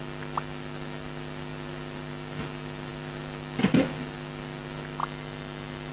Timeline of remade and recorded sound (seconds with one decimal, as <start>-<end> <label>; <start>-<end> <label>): 0.0-5.0 recorded; 5.0-5.9 remade